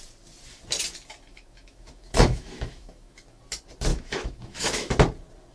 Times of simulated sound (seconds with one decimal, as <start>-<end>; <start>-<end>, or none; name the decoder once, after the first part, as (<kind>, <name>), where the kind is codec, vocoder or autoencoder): 1.3-3.4 (autoencoder, DAC-VAE); 3.9-4.9